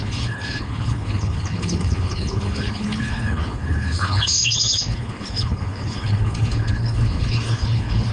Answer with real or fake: fake